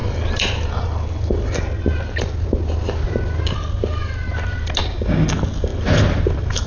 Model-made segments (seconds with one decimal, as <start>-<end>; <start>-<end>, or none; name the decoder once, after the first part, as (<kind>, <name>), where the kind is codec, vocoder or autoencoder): 4.8-5.3 (codec, DAC)